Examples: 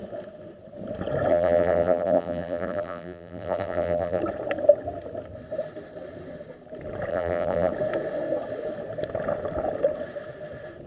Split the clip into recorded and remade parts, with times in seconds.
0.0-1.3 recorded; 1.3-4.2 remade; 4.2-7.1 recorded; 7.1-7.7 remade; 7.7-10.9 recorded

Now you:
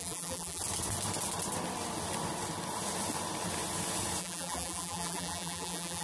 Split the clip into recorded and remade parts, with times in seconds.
0.0-0.6 remade; 0.6-4.2 recorded; 4.2-6.0 remade